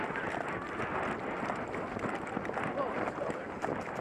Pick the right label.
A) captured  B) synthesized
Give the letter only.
A